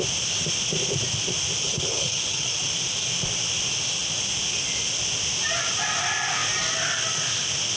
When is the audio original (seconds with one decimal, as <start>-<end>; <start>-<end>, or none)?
0.0-1.6; 2.6-7.8